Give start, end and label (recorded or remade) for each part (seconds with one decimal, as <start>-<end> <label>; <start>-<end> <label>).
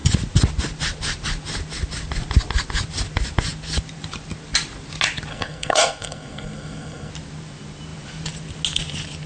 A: 0.0-5.3 recorded; 5.3-7.1 remade; 7.1-9.3 recorded